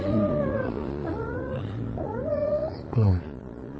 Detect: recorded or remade remade